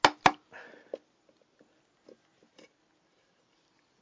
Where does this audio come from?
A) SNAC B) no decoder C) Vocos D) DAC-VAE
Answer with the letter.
B